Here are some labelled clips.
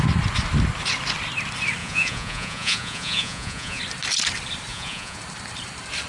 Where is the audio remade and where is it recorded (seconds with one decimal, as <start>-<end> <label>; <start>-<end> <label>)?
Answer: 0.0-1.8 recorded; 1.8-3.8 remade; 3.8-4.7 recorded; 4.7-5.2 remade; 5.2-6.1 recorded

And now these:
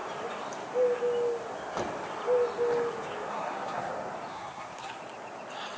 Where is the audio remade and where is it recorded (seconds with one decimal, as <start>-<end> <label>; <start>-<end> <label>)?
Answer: 0.0-3.3 recorded; 3.3-3.9 remade; 3.9-4.3 recorded; 4.3-5.0 remade; 5.0-5.8 recorded

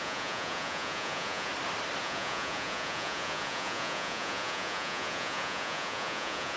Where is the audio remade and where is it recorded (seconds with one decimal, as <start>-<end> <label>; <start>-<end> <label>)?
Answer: 0.0-1.5 remade; 1.5-2.0 recorded; 2.0-6.6 remade

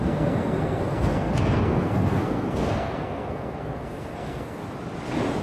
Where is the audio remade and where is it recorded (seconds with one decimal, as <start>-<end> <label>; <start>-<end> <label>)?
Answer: 0.0-4.6 remade; 4.6-5.4 recorded

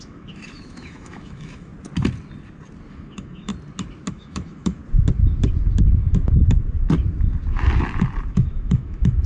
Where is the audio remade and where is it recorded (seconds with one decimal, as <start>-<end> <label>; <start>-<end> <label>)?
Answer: 0.0-1.7 remade; 1.7-2.9 recorded; 2.9-3.5 remade; 3.5-4.1 recorded; 4.1-4.8 remade; 4.8-8.3 recorded; 8.3-9.3 remade

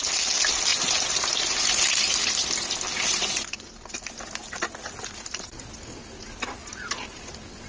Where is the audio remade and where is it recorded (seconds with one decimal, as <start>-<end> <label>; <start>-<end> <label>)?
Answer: 0.0-7.7 recorded

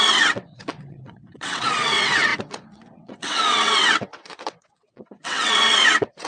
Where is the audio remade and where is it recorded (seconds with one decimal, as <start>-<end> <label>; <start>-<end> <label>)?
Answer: 0.0-6.3 remade